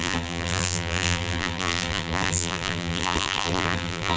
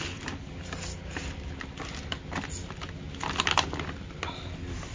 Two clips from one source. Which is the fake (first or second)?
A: first